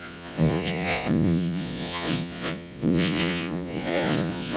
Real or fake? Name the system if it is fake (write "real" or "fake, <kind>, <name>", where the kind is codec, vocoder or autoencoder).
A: fake, vocoder, Vocos